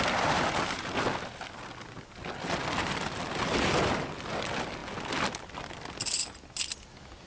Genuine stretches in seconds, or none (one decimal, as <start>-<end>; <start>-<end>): 0.0-7.3